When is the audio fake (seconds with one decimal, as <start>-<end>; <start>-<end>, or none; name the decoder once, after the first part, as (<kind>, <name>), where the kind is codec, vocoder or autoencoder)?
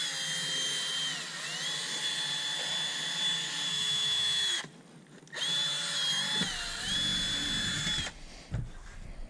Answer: 3.7-4.6 (autoencoder, DAC-VAE)